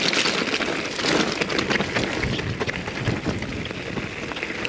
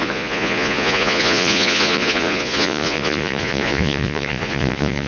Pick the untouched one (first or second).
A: first